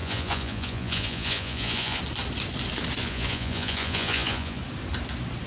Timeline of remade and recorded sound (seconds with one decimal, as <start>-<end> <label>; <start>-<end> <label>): 0.0-2.0 remade; 2.0-3.0 recorded; 3.0-4.6 remade; 4.6-5.5 recorded